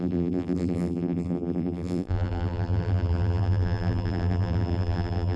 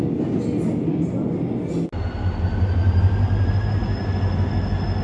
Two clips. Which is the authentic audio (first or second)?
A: second